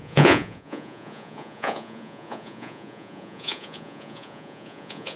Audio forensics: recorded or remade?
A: remade